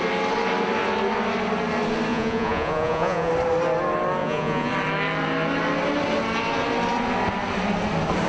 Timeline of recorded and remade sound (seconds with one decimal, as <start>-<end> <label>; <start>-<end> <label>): 0.0-2.1 recorded; 2.1-3.3 remade; 3.3-4.2 recorded; 4.2-4.7 remade; 4.7-8.3 recorded